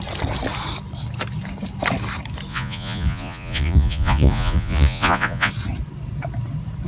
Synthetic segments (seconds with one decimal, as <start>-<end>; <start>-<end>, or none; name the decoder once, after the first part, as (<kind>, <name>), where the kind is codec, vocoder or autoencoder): 2.5-5.5 (vocoder, Vocos)